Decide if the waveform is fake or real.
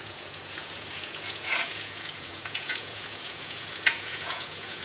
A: fake